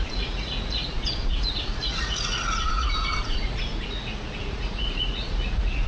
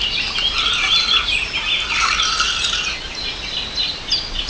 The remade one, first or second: first